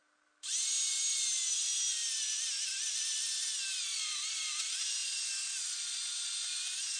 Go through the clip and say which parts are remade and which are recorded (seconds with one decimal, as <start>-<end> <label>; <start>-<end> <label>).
0.0-7.0 recorded